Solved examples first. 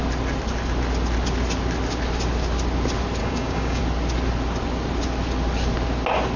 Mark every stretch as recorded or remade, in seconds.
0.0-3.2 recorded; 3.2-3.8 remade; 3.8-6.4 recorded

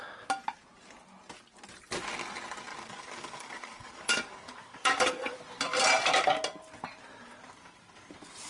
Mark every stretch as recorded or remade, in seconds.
0.0-2.7 recorded; 2.7-5.4 remade; 5.4-8.5 recorded

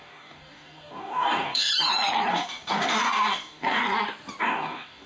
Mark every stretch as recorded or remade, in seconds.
0.0-1.7 remade; 1.7-2.3 recorded; 2.3-3.8 remade; 3.8-4.4 recorded; 4.4-5.1 remade

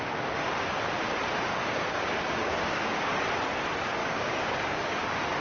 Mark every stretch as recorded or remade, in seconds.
0.0-1.5 recorded; 1.5-3.2 remade; 3.2-4.0 recorded; 4.0-5.0 remade; 5.0-5.4 recorded

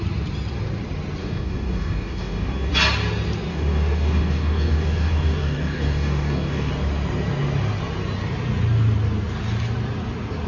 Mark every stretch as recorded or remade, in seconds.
0.0-1.2 recorded; 1.2-2.7 remade; 2.7-3.5 recorded; 3.5-6.7 remade; 6.7-10.5 recorded

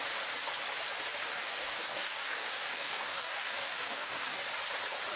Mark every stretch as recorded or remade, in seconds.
0.0-1.3 recorded; 1.3-4.4 remade; 4.4-5.2 recorded

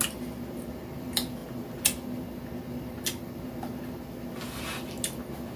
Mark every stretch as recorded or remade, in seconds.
0.0-5.6 recorded

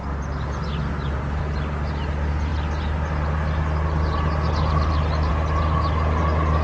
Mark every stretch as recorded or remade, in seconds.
0.0-6.6 recorded